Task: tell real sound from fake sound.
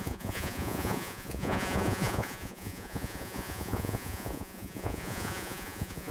fake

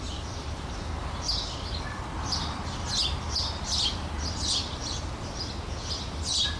real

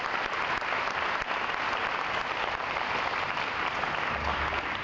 real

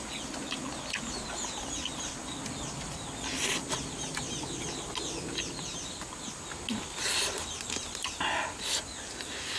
real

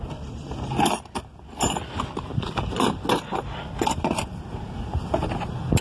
real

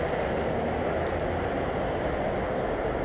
real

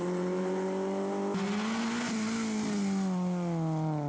real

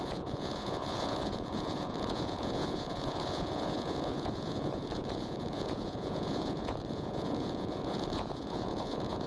fake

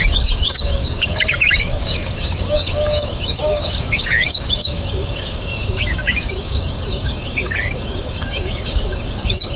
fake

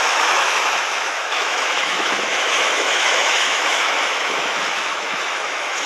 fake